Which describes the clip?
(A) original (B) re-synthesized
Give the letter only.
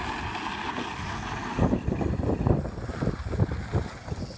A